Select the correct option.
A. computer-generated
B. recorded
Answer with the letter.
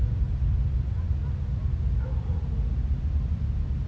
B